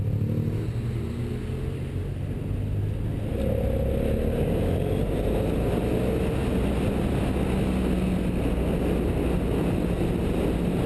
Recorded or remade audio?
recorded